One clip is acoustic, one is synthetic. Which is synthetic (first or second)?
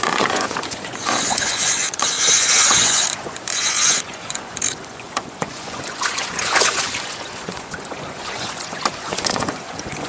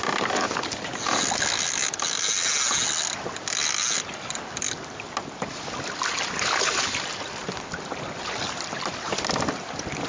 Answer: first